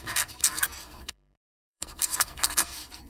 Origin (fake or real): fake